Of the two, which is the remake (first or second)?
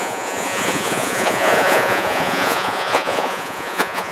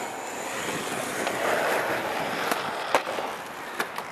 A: first